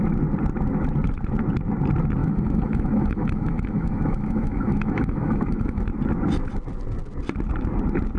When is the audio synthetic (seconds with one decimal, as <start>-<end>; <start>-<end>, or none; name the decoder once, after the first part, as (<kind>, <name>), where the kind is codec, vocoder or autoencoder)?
2.2-5.8 (autoencoder, DAC-VAE)